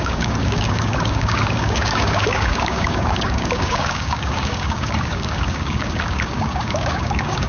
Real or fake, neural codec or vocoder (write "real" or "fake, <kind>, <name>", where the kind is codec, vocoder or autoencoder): fake, codec, DAC